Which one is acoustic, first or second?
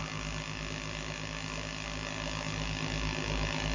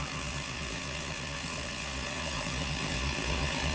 first